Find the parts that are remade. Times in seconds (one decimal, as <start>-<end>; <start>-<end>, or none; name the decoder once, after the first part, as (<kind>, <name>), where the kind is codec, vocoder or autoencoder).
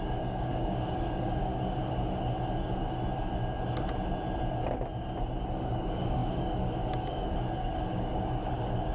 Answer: 0.0-1.5 (codec, DAC); 5.5-8.9